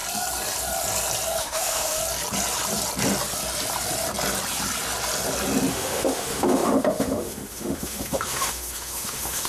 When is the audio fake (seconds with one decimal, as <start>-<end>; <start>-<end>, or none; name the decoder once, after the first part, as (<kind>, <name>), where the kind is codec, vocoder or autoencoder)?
1.4-2.0 (autoencoder, DAC-VAE); 5.7-9.5